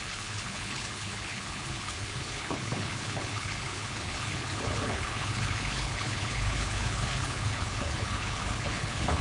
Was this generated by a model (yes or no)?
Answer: yes